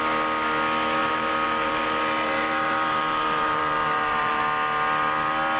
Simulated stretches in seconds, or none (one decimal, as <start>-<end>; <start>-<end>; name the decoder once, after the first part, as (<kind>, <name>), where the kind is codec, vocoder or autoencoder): 1.0-4.4 (vocoder, BigVGAN v2)